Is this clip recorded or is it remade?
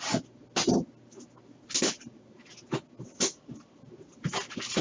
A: recorded